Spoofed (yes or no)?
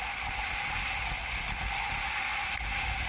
no